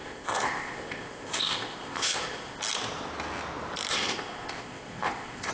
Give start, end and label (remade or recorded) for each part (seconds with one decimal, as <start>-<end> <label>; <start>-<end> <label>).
0.0-2.6 remade; 2.6-3.9 recorded; 3.9-5.5 remade